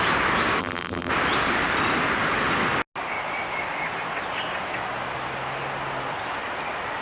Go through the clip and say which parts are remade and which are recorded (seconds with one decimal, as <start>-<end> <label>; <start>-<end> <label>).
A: 0.0-0.6 recorded; 0.6-1.1 remade; 1.1-7.0 recorded